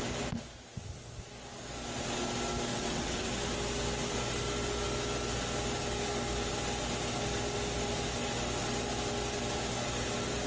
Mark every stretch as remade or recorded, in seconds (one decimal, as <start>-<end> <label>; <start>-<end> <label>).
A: 0.0-2.7 recorded; 2.7-3.3 remade; 3.3-10.5 recorded